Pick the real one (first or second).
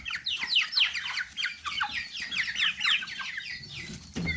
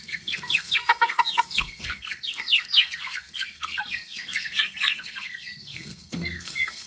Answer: first